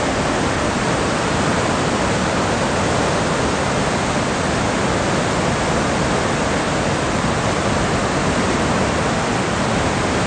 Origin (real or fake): real